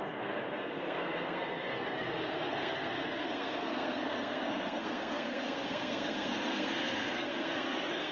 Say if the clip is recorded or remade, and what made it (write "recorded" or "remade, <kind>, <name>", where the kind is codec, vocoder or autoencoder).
remade, codec, SNAC